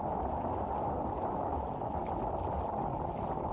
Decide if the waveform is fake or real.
real